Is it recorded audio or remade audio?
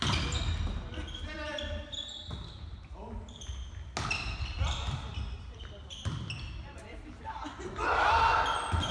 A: recorded